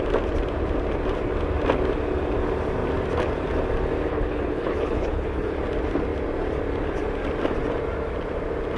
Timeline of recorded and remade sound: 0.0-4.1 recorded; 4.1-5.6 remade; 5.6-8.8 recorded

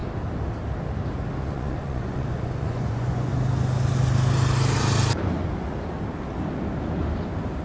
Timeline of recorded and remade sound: 0.0-1.4 recorded; 1.4-3.3 remade; 3.3-7.6 recorded

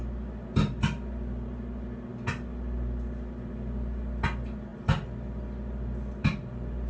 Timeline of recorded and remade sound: 0.0-6.9 recorded

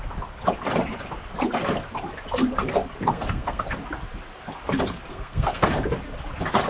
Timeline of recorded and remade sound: 0.0-3.1 recorded; 3.1-3.6 remade; 3.6-5.1 recorded; 5.1-5.7 remade; 5.7-6.7 recorded